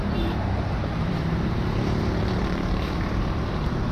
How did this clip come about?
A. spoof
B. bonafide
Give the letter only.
A